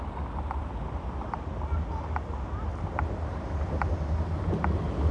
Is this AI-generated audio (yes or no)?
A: no